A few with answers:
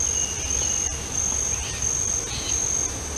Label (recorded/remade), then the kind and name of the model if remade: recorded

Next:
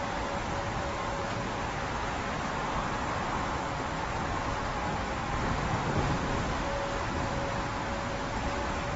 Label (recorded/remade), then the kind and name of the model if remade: recorded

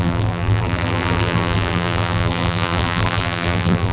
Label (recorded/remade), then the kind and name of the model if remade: remade, vocoder, BigVGAN v2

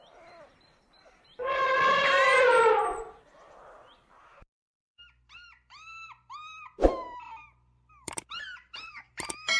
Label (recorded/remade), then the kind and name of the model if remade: remade, vocoder, BigVGAN v2